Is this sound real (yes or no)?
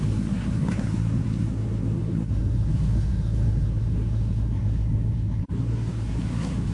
no